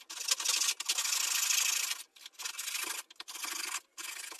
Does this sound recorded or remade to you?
recorded